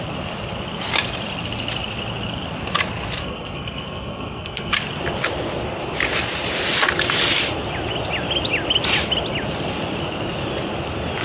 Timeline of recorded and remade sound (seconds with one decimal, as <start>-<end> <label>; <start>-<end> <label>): 0.0-3.2 recorded; 3.2-4.7 remade; 4.7-11.2 recorded